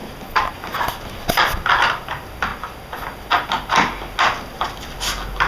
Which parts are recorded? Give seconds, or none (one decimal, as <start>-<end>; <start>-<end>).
0.0-5.5